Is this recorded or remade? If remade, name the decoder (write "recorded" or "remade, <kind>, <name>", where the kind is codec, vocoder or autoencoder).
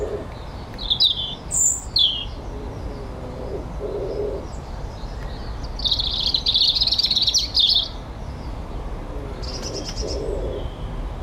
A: recorded